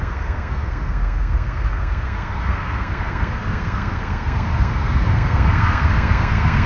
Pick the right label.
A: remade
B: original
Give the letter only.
A